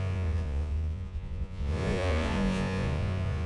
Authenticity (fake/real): fake